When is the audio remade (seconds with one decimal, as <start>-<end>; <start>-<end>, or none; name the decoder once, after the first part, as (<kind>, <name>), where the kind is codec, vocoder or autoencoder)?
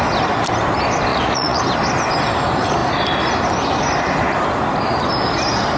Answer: 1.1-1.6 (vocoder, Vocos)